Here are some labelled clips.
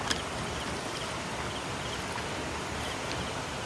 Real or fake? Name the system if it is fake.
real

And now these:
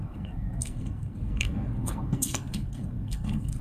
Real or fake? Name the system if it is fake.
fake, codec, SNAC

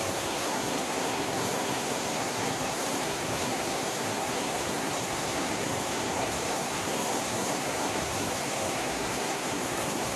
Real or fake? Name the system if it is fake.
fake, codec, SNAC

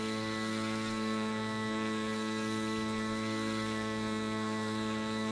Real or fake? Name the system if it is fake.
fake, codec, SNAC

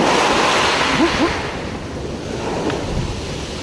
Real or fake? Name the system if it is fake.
real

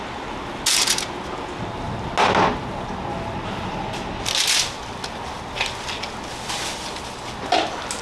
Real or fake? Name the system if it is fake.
real